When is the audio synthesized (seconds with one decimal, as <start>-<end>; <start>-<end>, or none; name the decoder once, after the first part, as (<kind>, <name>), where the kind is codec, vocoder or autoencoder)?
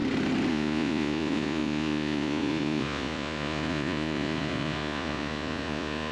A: 0.5-6.1 (vocoder, Vocos)